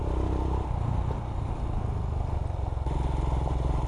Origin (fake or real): real